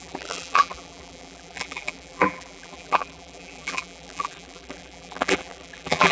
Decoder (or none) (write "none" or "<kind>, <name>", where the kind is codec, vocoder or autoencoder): vocoder, BigVGAN v2